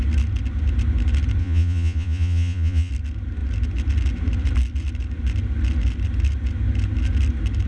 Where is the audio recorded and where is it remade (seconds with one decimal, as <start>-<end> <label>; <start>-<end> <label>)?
0.0-1.4 recorded; 1.4-2.9 remade; 2.9-7.7 recorded